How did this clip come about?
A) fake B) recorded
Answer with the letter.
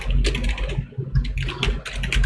B